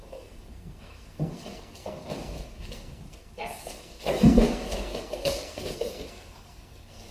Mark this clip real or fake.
fake